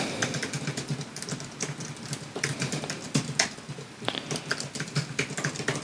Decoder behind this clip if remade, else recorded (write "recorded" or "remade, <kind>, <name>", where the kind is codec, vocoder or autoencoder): recorded